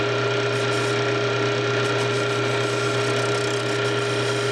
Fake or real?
real